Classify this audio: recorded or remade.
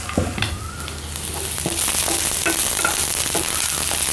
recorded